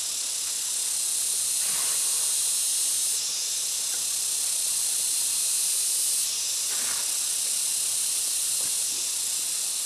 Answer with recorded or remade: recorded